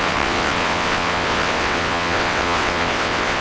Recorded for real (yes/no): no